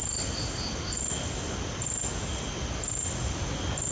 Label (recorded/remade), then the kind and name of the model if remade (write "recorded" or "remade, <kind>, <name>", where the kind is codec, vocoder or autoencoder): recorded